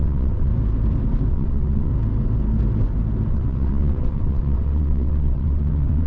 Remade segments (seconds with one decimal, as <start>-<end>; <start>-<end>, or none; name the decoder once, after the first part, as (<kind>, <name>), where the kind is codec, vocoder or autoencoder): 0.0-0.5 (vocoder, WaveNeXt); 1.3-1.9; 3.3-6.1